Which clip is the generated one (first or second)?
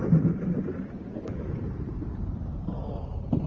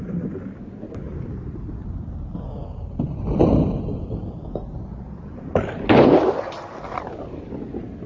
first